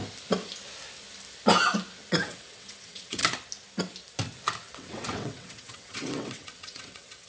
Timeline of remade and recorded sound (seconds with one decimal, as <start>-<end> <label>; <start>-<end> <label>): 0.0-2.1 recorded; 2.1-3.2 remade; 3.2-4.7 recorded; 4.7-7.3 remade